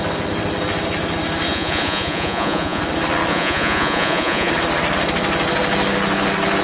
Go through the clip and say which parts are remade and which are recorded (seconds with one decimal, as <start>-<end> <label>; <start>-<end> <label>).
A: 0.0-1.5 recorded; 1.5-2.8 remade; 2.8-3.3 recorded; 3.3-4.5 remade; 4.5-6.6 recorded